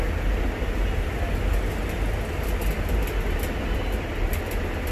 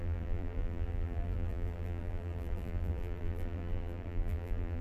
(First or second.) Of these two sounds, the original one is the first